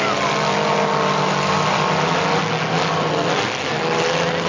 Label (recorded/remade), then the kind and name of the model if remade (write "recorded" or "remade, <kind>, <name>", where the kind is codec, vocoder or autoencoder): recorded